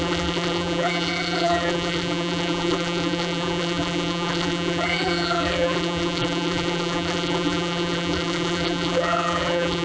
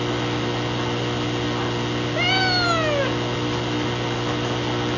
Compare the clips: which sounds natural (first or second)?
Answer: second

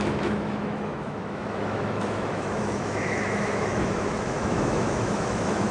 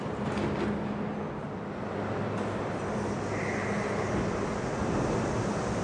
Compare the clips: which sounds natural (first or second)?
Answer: second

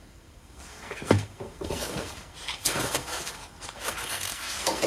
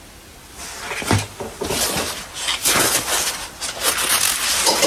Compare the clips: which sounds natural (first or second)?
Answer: second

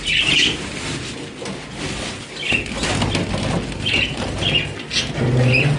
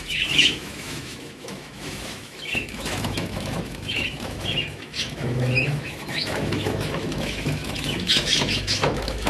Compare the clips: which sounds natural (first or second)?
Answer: first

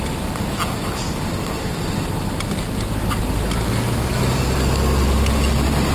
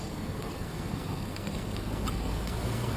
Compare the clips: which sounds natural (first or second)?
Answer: first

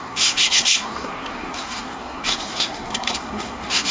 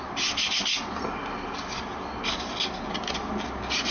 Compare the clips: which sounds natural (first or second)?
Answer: second